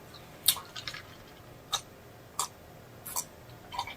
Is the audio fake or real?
real